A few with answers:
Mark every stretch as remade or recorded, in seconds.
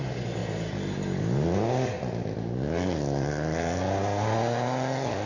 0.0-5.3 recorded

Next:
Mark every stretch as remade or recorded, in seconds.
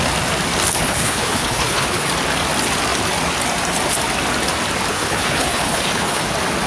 0.0-0.8 recorded; 0.8-2.1 remade; 2.1-4.9 recorded; 4.9-6.2 remade; 6.2-6.7 recorded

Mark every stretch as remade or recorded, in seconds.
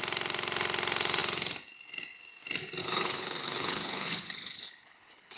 0.0-2.8 recorded; 2.8-5.4 remade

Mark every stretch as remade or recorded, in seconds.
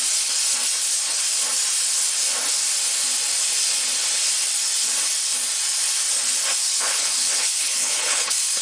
0.0-6.6 recorded; 6.6-8.6 remade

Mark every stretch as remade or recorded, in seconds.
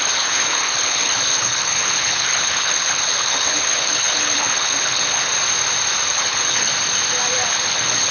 0.0-5.3 remade; 5.3-6.1 recorded; 6.1-6.7 remade; 6.7-7.5 recorded; 7.5-8.1 remade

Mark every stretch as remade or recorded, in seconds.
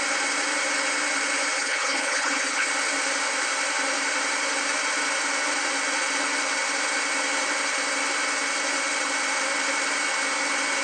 0.0-1.6 recorded; 1.6-2.7 remade; 2.7-10.8 recorded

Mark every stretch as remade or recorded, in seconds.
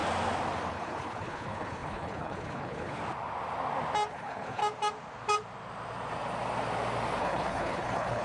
0.0-0.7 recorded; 0.7-3.0 remade; 3.0-4.1 recorded; 4.1-4.6 remade; 4.6-7.2 recorded; 7.2-8.2 remade